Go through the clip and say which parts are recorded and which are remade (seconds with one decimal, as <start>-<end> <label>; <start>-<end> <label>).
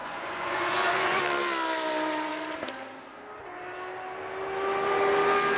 0.0-1.2 remade; 1.2-5.6 recorded